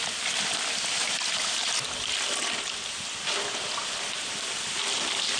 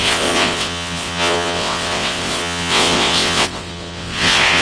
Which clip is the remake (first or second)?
second